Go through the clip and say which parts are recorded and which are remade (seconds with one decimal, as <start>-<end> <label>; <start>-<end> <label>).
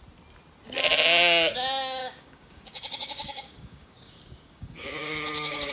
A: 0.0-2.0 recorded; 2.0-5.7 remade